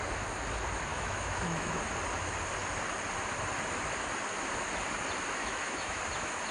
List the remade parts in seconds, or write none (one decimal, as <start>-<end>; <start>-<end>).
0.9-1.8; 5.4-6.0